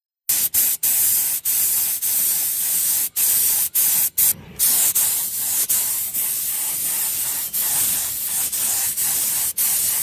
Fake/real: real